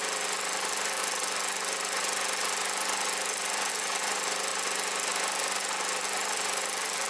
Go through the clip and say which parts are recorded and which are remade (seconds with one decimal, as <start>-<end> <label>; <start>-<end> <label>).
0.0-1.0 remade; 1.0-3.7 recorded; 3.7-4.5 remade; 4.5-5.6 recorded; 5.6-7.1 remade